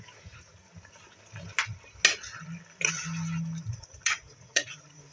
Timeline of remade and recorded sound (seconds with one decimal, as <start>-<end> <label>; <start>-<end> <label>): 0.0-0.6 remade; 0.6-3.7 recorded; 3.7-5.1 remade